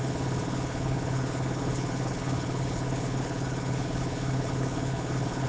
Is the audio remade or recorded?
remade